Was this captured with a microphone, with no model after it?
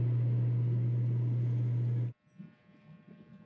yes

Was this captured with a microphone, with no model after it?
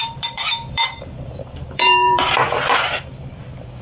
no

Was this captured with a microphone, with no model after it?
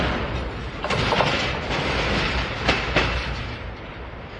yes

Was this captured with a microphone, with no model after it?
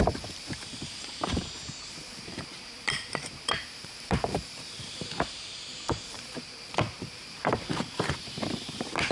no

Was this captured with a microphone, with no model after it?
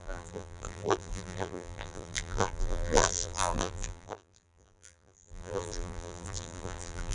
no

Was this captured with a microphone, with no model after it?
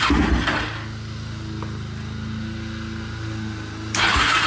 yes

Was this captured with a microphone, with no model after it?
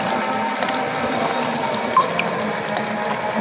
yes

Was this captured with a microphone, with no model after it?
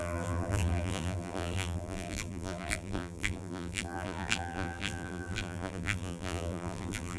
no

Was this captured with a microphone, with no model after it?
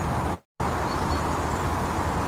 no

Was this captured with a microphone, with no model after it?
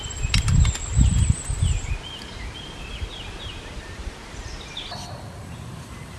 no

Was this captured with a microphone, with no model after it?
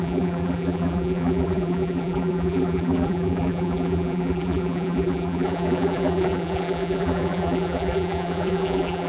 no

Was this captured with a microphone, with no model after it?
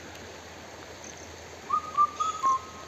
no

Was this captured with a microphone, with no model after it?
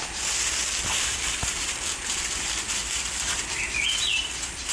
no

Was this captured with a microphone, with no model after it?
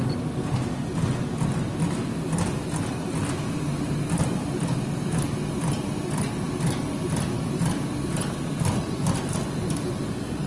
yes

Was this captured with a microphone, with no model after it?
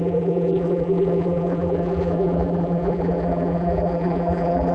no